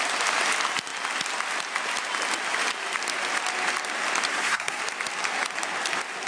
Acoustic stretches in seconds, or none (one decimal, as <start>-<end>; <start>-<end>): 0.0-4.3; 4.8-6.3